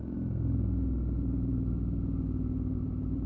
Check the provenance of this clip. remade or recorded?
recorded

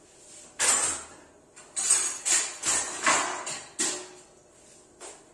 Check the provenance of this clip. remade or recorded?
recorded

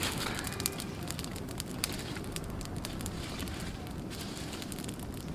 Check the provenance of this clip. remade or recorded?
recorded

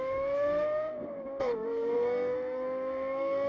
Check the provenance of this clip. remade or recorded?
remade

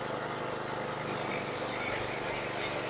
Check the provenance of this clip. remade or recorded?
recorded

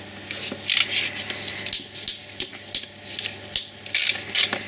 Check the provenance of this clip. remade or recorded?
recorded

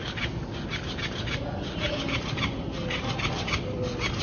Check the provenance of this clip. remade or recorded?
recorded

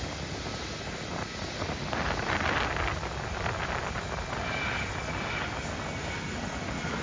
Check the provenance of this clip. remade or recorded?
recorded